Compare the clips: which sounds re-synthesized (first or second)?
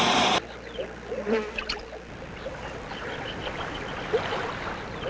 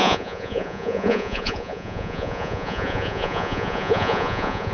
second